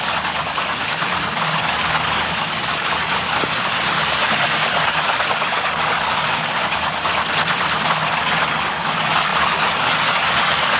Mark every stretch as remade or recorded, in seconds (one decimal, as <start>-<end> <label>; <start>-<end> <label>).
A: 0.0-7.1 remade; 7.1-8.2 recorded; 8.2-10.8 remade